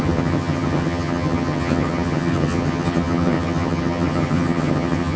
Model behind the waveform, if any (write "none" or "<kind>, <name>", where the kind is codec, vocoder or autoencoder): vocoder, HiFi-GAN